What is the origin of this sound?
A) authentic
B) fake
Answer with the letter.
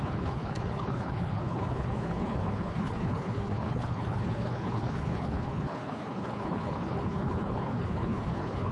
B